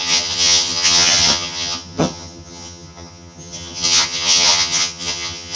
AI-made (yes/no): yes